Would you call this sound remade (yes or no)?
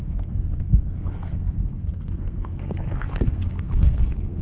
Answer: yes